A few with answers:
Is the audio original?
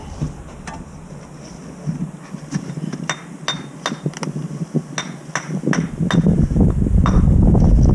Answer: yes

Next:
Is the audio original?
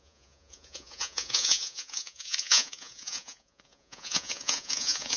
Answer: no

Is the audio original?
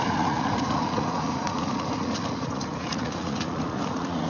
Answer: no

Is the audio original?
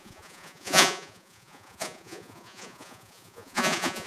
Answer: no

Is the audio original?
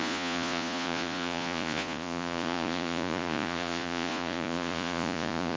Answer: no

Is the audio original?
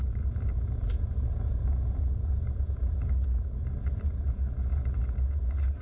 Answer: no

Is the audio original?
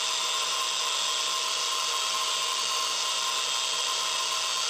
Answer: yes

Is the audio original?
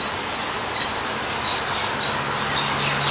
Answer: yes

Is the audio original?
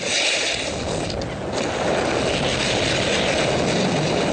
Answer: yes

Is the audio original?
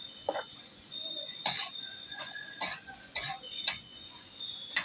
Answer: no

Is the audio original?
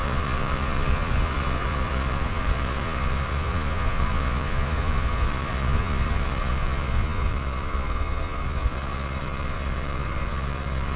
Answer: no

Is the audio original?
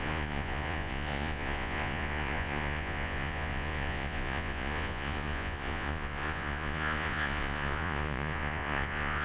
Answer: no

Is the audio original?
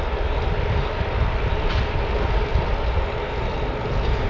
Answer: yes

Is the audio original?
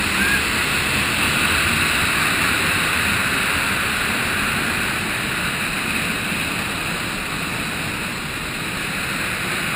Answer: yes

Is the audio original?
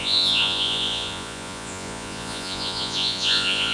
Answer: no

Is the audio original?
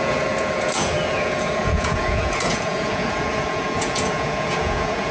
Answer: no